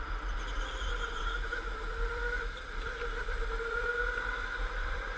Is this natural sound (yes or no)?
no